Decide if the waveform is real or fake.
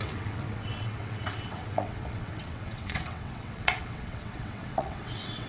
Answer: fake